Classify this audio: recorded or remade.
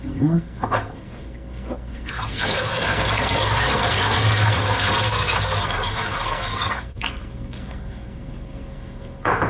remade